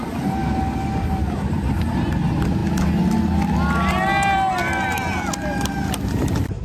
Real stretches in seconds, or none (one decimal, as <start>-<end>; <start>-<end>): 0.0-6.6